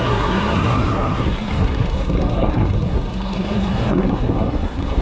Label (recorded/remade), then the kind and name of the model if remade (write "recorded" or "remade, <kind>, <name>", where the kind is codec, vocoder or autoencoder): remade, codec, SNAC